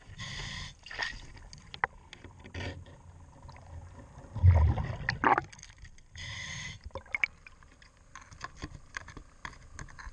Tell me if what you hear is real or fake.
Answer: real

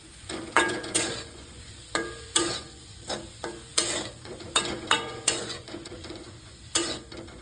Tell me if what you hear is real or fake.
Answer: fake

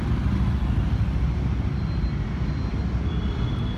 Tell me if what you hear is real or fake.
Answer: real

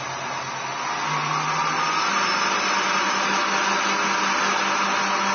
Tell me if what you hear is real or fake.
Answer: real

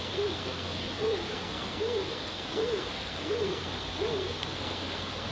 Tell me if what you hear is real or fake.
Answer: fake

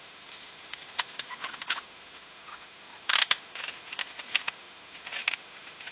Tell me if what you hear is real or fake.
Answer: fake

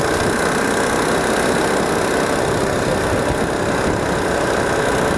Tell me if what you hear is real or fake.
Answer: real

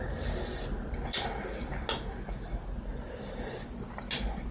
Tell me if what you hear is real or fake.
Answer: real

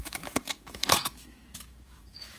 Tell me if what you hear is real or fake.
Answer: fake